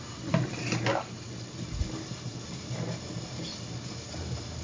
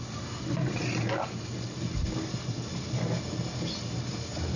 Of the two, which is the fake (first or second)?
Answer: first